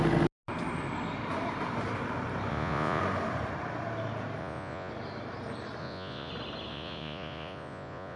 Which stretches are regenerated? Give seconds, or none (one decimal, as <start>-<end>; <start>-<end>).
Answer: 2.5-3.0; 4.4-4.9; 5.8-6.3; 6.7-8.2